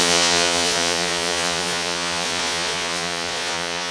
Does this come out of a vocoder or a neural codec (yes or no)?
yes